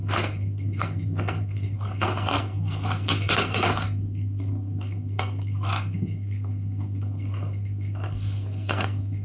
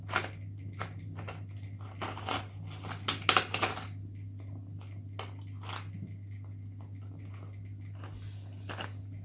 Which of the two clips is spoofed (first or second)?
first